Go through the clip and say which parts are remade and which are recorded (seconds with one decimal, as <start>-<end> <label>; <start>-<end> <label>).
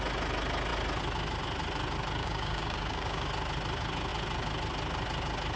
0.0-2.2 recorded; 2.2-3.3 remade; 3.3-5.6 recorded